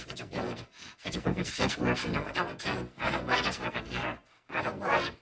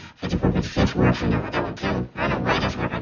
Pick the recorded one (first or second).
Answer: second